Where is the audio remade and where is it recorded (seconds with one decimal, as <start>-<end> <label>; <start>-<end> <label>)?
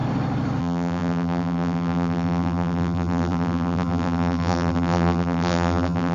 0.0-0.6 recorded; 0.6-6.1 remade